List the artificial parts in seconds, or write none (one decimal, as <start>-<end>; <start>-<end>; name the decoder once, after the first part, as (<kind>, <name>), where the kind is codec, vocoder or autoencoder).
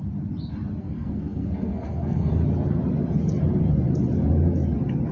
0.8-2.3 (codec, SNAC)